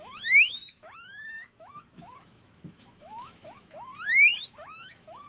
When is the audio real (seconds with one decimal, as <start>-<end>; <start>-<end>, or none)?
3.9-4.5